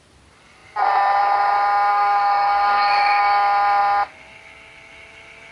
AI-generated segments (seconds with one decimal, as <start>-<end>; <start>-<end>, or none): 1.9-3.2